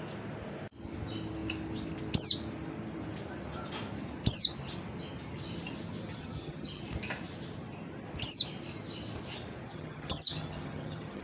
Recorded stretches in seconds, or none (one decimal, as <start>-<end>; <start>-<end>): 0.0-6.1; 6.8-9.7

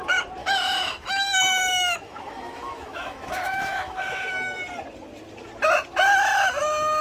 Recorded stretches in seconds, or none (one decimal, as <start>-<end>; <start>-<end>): 0.0-0.4; 4.6-7.0

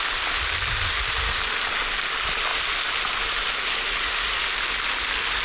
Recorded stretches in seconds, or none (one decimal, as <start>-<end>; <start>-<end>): 0.0-5.4

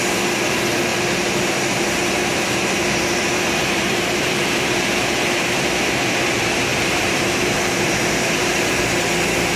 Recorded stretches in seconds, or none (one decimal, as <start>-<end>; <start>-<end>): 0.0-0.9; 6.0-6.7; 8.8-9.6

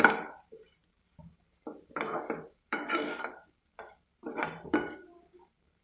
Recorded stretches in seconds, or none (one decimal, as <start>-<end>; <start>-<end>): none

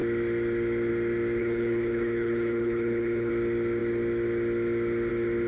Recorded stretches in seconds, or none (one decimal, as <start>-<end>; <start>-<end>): 0.0-1.4; 3.3-5.5

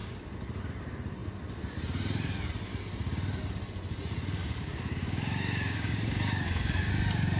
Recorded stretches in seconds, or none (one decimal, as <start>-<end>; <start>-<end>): 0.0-4.4; 6.9-7.4

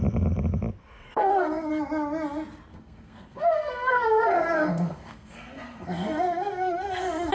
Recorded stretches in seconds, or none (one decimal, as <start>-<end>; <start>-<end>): 0.0-0.8; 1.7-2.7